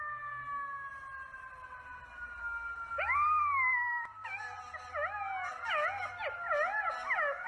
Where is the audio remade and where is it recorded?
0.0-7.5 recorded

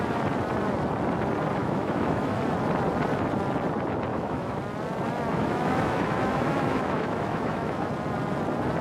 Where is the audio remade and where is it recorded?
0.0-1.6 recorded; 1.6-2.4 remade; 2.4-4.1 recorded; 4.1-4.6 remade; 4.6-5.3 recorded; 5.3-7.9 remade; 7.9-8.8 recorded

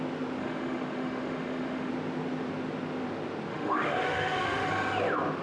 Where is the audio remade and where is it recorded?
0.0-0.4 recorded; 0.4-1.9 remade; 1.9-3.5 recorded; 3.5-4.7 remade; 4.7-5.4 recorded

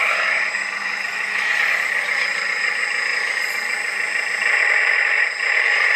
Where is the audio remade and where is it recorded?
0.0-0.8 recorded; 0.8-1.5 remade; 1.5-6.0 recorded